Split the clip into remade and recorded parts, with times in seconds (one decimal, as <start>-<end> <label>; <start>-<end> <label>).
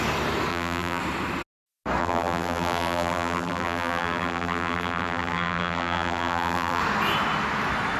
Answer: 0.0-0.5 recorded; 0.5-1.0 remade; 1.0-2.0 recorded; 2.0-6.8 remade; 6.8-8.0 recorded